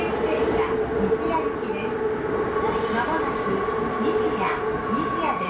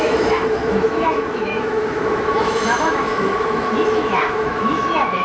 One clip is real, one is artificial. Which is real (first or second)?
first